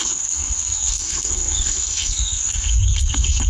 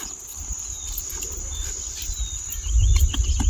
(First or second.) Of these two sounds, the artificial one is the first